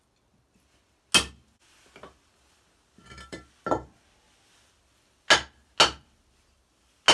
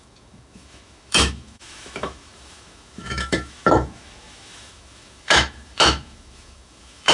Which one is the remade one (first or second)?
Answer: second